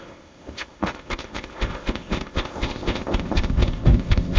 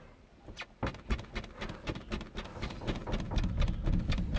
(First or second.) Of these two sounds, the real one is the second